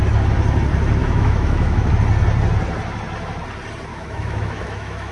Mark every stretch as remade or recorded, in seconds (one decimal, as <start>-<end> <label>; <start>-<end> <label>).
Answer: 0.0-1.0 recorded; 1.0-1.9 remade; 1.9-3.9 recorded; 3.9-5.1 remade